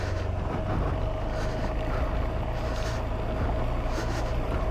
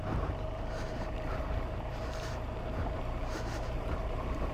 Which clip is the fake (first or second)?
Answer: second